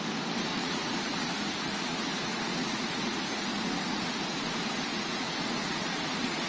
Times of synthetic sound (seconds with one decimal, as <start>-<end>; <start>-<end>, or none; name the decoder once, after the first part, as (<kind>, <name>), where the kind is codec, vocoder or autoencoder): 0.5-4.4 (vocoder, Vocos); 4.9-6.5